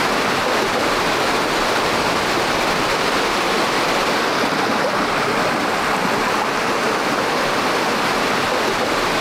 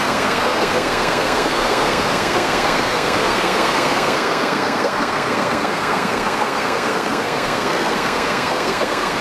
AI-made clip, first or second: second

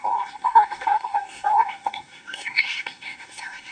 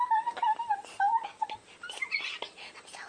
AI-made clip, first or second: first